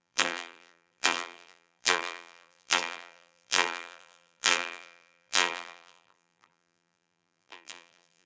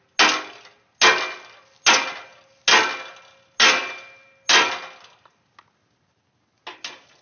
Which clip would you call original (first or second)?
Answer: second